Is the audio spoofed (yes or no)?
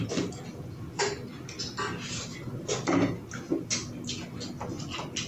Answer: no